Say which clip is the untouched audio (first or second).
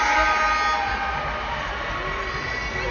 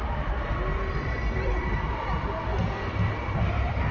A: first